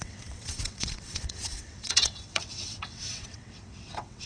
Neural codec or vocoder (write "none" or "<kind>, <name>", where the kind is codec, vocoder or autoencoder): vocoder, WaveNeXt